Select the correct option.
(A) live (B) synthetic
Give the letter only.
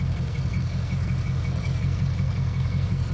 B